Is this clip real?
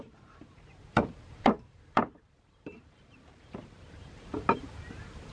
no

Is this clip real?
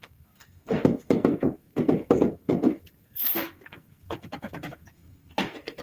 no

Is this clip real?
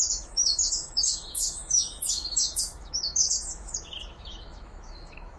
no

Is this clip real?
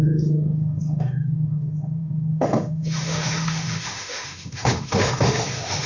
no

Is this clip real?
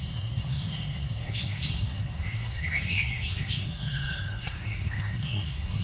no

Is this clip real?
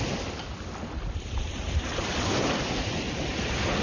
yes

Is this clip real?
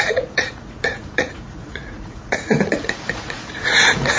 no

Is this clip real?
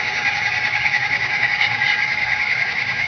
no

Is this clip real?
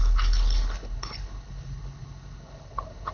no